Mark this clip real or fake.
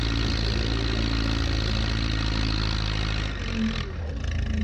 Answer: real